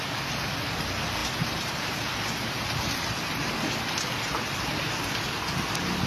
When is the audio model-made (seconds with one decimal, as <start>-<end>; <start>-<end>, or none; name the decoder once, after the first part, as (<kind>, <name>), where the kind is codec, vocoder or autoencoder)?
none